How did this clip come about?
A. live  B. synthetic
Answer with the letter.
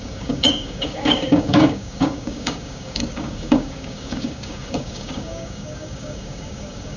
B